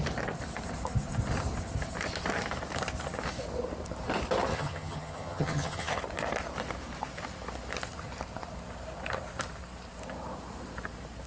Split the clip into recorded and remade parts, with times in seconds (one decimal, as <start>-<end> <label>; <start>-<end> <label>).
0.0-4.5 recorded; 4.5-6.0 remade; 6.0-11.3 recorded